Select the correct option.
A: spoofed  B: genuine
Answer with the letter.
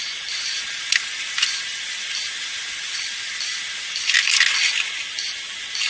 B